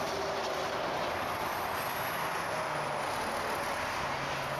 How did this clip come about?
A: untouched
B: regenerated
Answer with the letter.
A